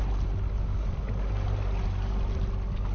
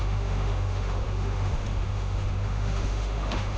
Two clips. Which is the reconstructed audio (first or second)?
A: second